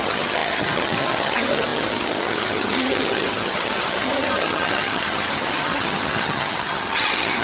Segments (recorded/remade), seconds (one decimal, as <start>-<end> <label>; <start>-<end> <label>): 0.0-7.4 remade